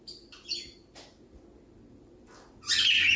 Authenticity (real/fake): real